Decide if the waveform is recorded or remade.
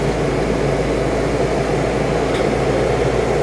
recorded